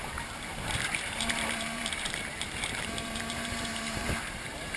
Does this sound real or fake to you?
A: fake